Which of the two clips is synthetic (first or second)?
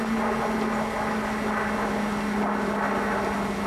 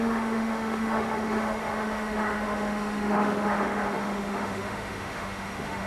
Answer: second